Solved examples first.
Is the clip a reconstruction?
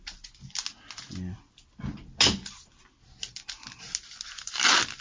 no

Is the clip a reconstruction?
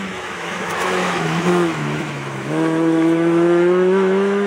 yes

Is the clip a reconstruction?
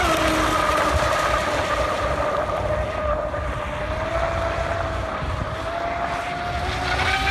no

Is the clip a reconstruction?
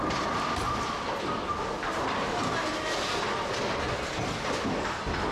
no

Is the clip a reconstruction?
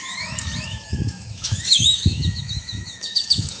yes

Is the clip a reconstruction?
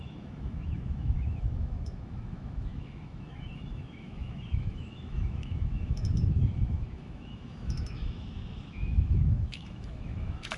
yes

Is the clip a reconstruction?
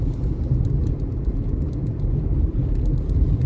no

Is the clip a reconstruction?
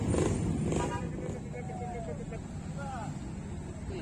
no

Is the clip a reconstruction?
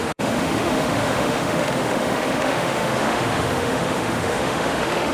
yes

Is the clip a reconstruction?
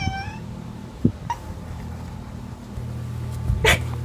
no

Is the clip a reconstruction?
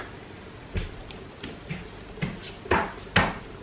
no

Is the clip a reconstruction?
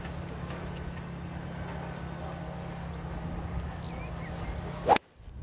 no